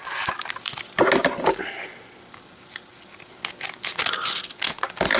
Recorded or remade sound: recorded